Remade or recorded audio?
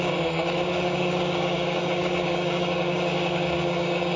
remade